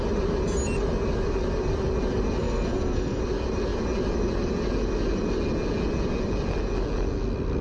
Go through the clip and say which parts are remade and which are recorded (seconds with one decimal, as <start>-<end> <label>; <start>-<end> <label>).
0.0-2.4 recorded; 2.4-3.2 remade; 3.2-7.6 recorded